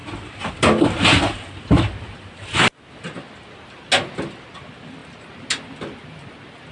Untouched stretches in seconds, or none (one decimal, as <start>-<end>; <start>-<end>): 0.0-6.7